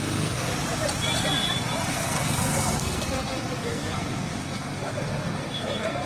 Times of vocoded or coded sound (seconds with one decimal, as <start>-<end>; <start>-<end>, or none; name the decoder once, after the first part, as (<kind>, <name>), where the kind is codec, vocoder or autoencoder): 0.0-0.5 (codec, SNAC); 1.9-6.1